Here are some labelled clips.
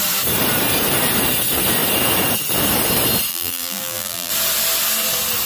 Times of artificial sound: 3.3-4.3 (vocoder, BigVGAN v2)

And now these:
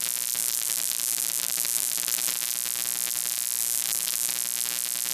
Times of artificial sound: 0.4-2.3 (vocoder, BigVGAN v2); 3.6-4.3

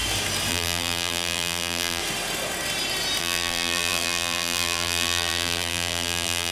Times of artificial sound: 0.5-2.0 (vocoder, BigVGAN v2); 3.2-6.5

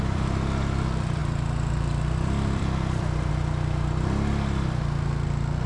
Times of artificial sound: 0.0-5.7 (vocoder, BigVGAN v2)

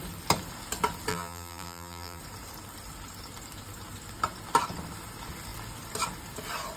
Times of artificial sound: 1.1-2.2 (vocoder, BigVGAN v2)

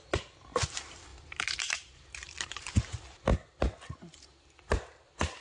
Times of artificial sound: 1.1-2.6 (vocoder, BigVGAN v2)

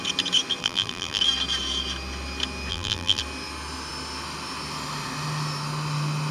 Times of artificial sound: 0.6-1.2 (vocoder, BigVGAN v2); 2.7-3.2